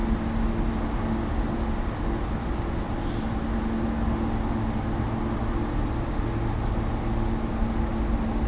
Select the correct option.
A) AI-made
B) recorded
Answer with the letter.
B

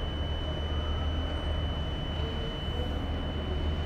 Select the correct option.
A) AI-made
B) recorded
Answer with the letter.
B